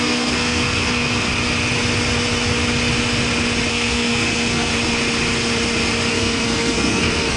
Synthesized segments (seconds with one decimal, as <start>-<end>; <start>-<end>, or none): 0.0-1.3; 3.7-4.7; 6.1-7.4